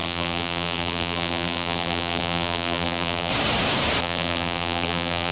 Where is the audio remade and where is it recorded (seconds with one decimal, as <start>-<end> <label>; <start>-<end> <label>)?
0.0-3.3 remade; 3.3-4.0 recorded; 4.0-5.3 remade